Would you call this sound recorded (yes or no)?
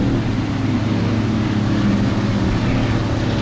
yes